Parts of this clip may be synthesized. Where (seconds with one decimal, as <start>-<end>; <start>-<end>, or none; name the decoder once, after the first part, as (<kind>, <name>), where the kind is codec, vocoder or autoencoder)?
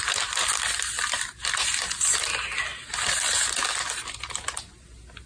none